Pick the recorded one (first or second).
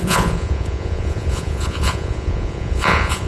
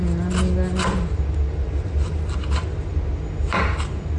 second